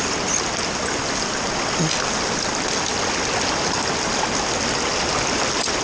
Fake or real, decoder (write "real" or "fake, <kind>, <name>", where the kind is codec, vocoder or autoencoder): real